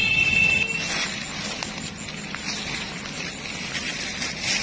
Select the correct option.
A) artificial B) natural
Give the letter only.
B